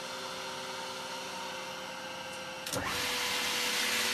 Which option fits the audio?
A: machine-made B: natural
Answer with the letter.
B